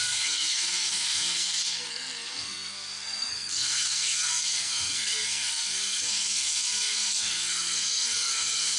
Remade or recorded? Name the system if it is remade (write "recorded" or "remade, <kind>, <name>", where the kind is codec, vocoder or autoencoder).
remade, codec, SNAC